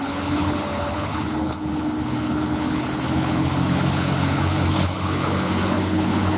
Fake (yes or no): yes